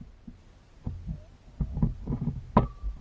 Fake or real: real